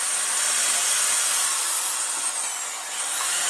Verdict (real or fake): real